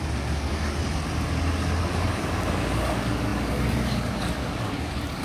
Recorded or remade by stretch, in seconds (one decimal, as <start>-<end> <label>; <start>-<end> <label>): 0.0-0.8 remade; 0.8-1.8 recorded; 1.8-5.2 remade